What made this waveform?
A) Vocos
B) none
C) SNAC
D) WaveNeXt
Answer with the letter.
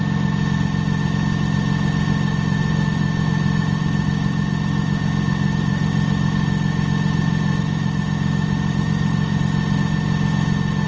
B